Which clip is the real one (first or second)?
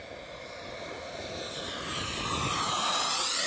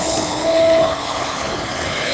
first